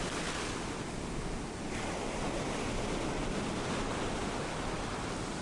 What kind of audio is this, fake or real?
real